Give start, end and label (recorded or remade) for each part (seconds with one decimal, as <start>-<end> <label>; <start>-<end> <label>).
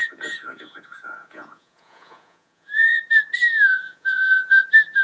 0.0-3.0 remade; 3.0-3.7 recorded; 3.7-4.6 remade; 4.6-5.0 recorded